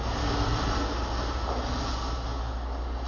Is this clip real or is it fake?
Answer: real